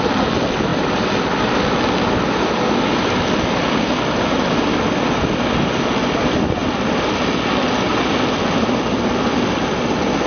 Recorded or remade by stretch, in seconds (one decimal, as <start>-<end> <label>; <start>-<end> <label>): 0.0-10.3 recorded